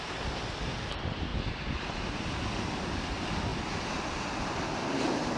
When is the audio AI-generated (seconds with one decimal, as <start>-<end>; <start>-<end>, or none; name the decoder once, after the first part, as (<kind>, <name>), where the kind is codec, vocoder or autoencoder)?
0.0-0.4 (vocoder, BigVGAN v2); 0.9-1.3; 2.6-3.5; 4.7-5.4

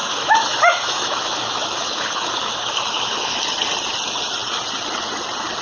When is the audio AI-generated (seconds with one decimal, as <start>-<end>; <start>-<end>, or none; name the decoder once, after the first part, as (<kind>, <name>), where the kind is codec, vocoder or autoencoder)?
0.0-3.4 (autoencoder, DAC-VAE)

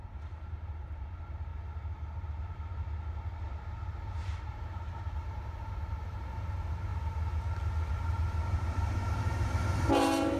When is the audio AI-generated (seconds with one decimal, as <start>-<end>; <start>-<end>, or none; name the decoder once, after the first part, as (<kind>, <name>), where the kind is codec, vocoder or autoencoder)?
0.0-1.5 (vocoder, BigVGAN v2); 4.4-6.9; 7.9-10.4

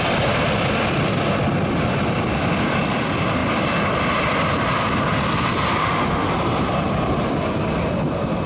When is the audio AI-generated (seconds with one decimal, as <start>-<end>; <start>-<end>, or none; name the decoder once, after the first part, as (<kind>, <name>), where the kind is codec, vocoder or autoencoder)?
5.8-6.3 (autoencoder, DAC-VAE)